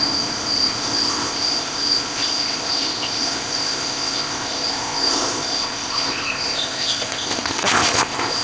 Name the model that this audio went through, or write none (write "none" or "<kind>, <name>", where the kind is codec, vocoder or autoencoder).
codec, ZipCodec